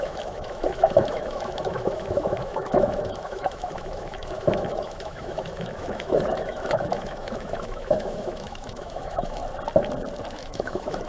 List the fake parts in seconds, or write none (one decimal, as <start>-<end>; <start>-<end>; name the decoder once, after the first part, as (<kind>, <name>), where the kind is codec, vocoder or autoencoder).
0.0-9.4 (autoencoder, DAC-VAE); 10.3-11.1